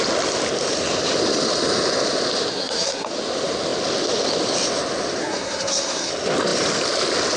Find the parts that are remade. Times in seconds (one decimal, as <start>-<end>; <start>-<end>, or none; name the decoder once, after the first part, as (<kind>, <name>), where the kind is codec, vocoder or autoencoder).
2.5-3.1 (codec, SNAC); 5.2-6.1